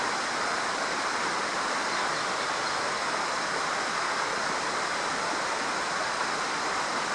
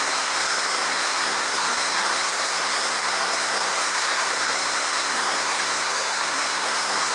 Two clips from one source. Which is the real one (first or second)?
first